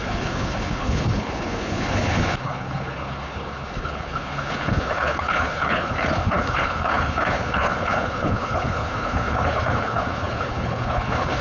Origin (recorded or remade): remade